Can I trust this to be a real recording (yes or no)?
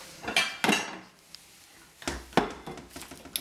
yes